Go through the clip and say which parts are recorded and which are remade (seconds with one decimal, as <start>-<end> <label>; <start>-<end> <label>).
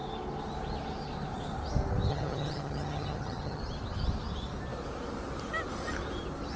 0.0-2.1 recorded; 2.1-3.6 remade; 3.6-6.6 recorded